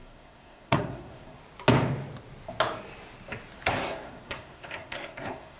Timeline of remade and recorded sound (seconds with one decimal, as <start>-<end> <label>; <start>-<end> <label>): 0.0-1.4 remade; 1.4-3.7 recorded; 3.7-5.6 remade